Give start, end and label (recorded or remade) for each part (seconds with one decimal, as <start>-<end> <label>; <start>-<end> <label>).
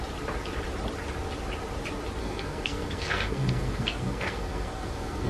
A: 0.0-2.2 recorded; 2.2-5.3 remade